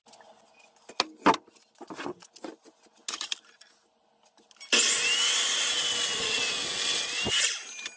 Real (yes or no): yes